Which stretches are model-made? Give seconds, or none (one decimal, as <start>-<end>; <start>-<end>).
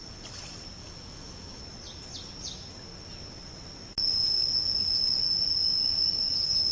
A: 0.8-1.6